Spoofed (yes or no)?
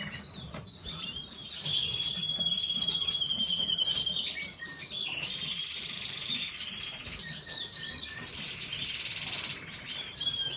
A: yes